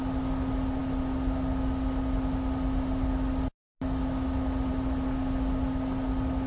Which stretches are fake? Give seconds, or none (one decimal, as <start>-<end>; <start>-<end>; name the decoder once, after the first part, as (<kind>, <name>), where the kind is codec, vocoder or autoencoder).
none